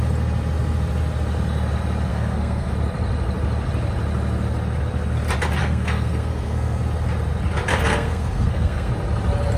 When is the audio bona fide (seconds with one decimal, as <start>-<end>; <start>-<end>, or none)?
0.0-2.1; 2.7-5.6; 6.8-7.7; 8.9-9.6